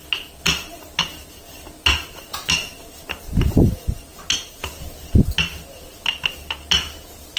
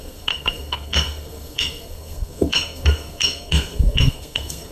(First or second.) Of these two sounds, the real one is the first